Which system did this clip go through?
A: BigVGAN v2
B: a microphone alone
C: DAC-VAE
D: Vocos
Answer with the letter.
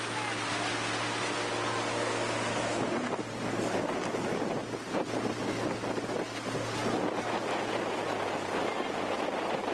B